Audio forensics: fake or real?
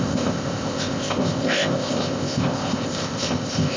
fake